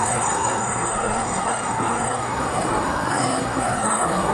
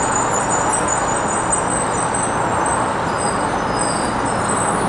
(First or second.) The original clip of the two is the second